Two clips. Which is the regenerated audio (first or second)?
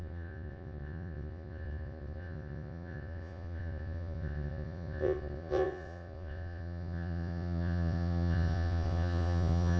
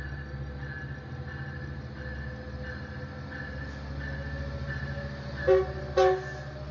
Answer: first